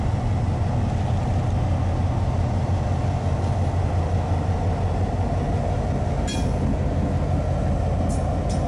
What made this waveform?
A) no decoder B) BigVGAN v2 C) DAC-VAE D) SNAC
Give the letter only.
A